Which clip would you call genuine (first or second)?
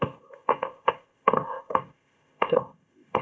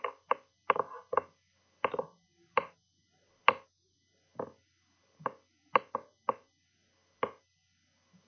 second